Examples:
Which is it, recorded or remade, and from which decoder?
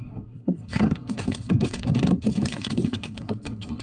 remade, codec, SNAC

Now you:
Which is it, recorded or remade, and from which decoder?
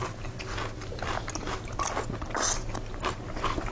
recorded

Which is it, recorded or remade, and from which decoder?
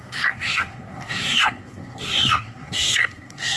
remade, codec, SNAC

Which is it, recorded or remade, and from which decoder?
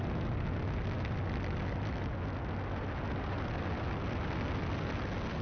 recorded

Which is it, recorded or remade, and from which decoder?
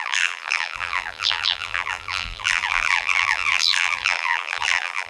remade, vocoder, BigVGAN v2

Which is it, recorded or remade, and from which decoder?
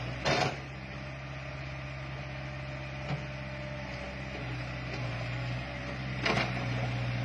recorded